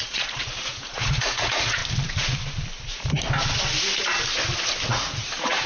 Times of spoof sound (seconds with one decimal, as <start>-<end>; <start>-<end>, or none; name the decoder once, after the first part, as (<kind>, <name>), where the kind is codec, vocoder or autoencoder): 0.0-1.8 (vocoder, Vocos); 4.9-5.7